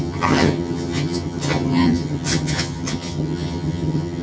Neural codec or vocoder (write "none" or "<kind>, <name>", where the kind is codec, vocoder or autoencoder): vocoder, HiFi-GAN